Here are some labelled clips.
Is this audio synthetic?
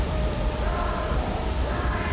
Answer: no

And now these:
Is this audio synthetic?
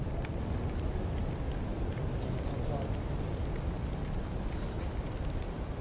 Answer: no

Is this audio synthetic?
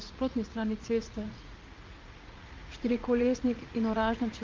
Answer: yes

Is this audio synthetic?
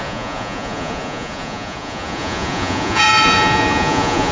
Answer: yes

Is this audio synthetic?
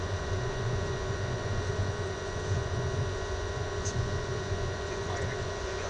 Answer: yes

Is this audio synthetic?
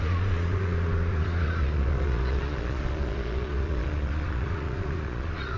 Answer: yes